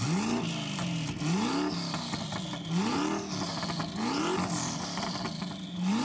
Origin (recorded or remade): recorded